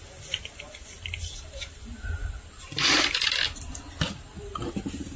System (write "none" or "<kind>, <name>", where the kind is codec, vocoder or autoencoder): none